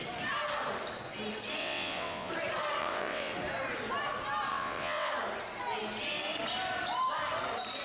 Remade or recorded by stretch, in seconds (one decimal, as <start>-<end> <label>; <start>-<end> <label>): 0.0-1.6 recorded; 1.6-2.3 remade; 2.3-2.8 recorded; 2.8-3.3 remade; 3.3-4.5 recorded; 4.5-5.1 remade; 5.1-7.8 recorded